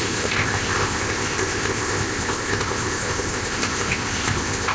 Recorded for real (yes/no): no